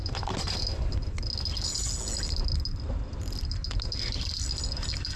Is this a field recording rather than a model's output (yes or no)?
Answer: yes